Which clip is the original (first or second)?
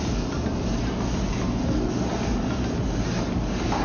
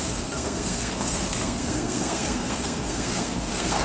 first